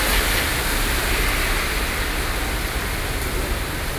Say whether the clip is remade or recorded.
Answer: recorded